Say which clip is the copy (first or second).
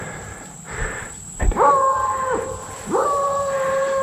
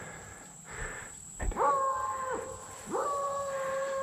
first